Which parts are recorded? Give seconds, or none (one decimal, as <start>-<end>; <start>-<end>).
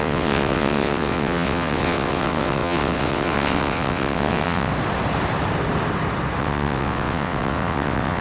4.7-6.4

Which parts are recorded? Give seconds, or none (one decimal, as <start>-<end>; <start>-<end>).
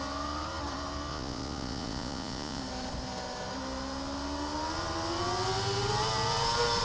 0.0-1.1; 2.6-6.8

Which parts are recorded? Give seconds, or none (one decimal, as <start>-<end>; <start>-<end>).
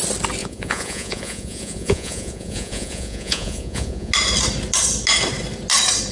0.0-0.4; 4.1-6.1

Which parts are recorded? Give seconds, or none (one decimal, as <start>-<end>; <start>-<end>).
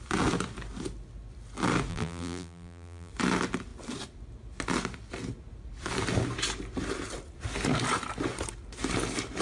0.0-1.9; 3.1-9.4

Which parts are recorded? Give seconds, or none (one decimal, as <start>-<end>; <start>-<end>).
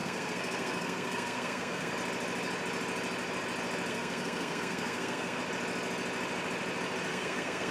1.9-3.9; 5.4-7.1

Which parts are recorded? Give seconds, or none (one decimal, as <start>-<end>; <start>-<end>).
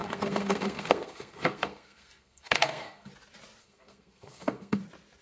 3.1-3.6; 4.8-5.2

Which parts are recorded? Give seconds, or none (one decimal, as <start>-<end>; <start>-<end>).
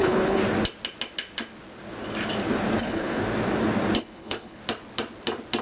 0.4-2.8; 3.2-4.0; 4.6-5.6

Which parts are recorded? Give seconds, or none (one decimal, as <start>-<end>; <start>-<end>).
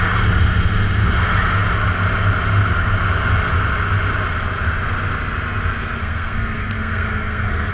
0.0-6.0